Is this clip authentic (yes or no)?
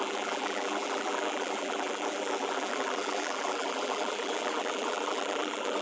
no